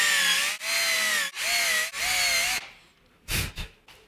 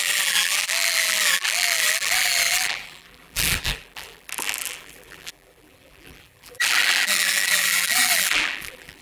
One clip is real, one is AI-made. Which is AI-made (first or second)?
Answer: second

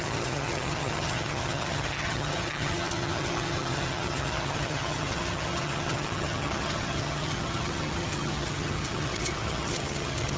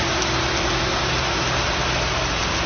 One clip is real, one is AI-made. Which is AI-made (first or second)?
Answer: first